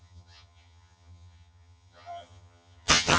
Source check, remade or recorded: remade